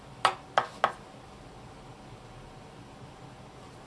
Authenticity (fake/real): real